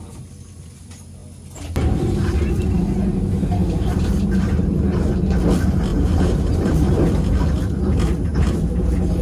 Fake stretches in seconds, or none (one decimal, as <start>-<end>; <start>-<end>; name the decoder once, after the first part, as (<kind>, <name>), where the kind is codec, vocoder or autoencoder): 3.6-4.9 (vocoder, BigVGAN v2); 5.9-6.9; 8.3-9.2